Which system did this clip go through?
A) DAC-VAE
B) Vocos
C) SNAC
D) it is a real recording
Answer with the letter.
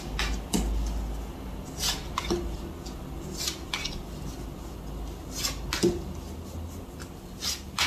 D